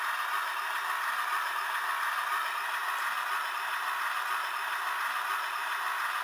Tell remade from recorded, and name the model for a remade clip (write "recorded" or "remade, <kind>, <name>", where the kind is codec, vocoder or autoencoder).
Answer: recorded